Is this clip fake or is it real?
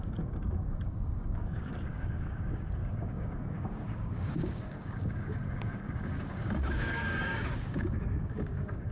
fake